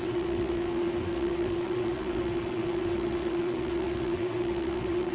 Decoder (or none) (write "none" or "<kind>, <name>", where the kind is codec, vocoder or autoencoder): vocoder, WaveNeXt